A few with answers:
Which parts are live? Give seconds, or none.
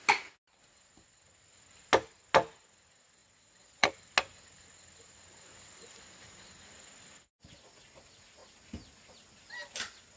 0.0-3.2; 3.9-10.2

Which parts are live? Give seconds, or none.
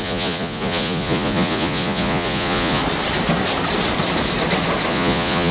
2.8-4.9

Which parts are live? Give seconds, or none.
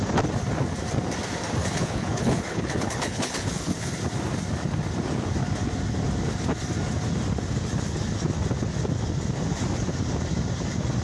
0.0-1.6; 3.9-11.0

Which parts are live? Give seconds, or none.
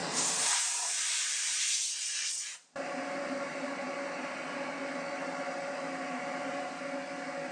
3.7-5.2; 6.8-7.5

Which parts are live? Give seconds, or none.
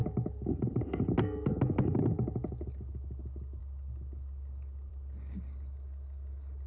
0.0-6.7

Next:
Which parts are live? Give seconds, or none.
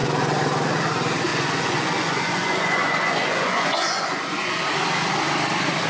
0.0-1.3; 4.6-5.9